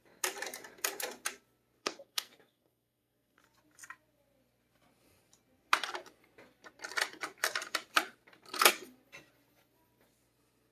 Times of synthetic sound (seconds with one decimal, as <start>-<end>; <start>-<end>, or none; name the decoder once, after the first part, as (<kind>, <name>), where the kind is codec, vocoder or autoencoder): 1.8-3.4 (codec, SNAC)